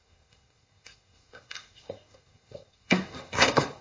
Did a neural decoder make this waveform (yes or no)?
yes